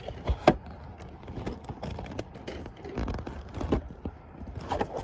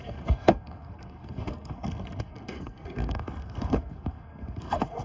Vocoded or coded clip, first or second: second